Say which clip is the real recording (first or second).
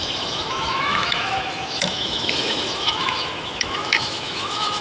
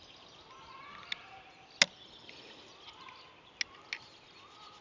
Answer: second